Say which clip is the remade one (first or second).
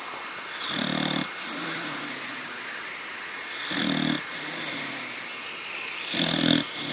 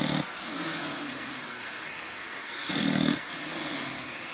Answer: second